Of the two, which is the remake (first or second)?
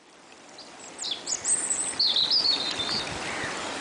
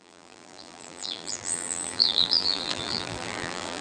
second